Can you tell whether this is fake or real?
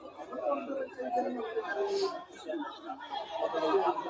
real